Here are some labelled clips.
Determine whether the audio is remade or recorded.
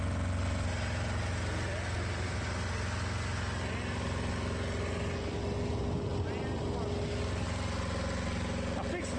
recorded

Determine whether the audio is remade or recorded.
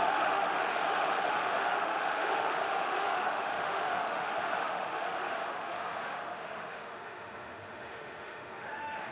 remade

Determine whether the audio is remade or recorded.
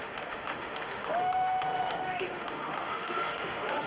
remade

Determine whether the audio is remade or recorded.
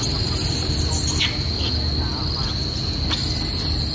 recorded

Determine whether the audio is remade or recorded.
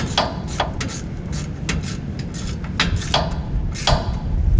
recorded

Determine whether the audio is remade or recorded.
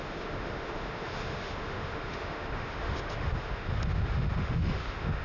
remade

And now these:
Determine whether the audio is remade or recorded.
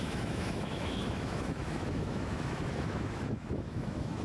remade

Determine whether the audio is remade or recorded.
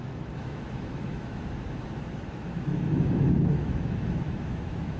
remade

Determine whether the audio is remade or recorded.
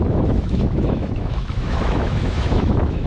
remade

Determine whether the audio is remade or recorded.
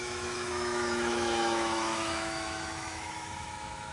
remade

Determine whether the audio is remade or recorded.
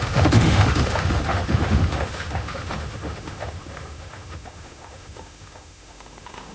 remade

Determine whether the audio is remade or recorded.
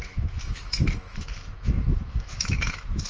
remade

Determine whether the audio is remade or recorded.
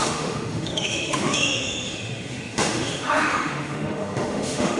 remade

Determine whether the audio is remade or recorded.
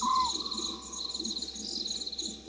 recorded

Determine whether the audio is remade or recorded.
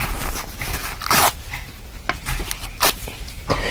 recorded